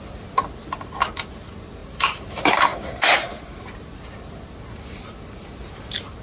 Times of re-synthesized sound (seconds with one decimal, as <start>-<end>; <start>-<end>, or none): 1.8-2.3